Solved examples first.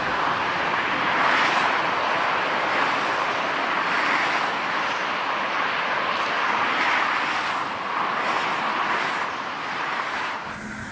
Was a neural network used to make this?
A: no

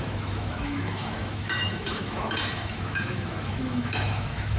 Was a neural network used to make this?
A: yes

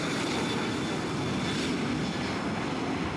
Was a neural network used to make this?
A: no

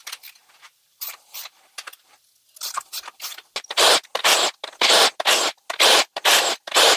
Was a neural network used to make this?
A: no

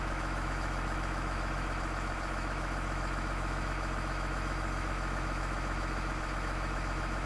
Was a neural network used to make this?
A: yes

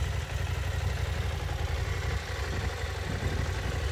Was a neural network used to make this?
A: no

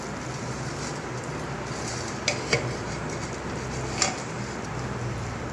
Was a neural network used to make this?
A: no